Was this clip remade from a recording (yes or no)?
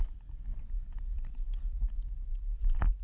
no